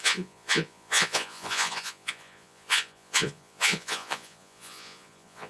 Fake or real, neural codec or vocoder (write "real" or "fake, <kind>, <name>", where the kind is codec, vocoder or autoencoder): fake, vocoder, Vocos